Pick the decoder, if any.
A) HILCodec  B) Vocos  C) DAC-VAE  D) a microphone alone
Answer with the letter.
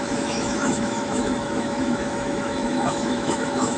C